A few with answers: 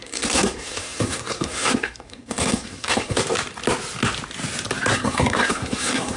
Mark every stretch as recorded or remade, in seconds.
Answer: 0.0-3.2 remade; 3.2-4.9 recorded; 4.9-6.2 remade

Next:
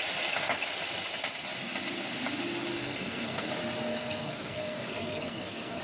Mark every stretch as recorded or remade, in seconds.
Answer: 0.0-2.7 recorded; 2.7-3.5 remade; 3.5-3.9 recorded; 3.9-5.8 remade